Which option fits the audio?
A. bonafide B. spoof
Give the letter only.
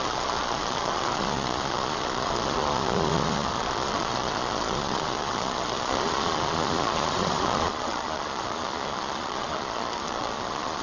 B